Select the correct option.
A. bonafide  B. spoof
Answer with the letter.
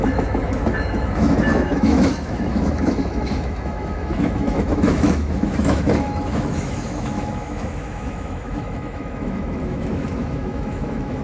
B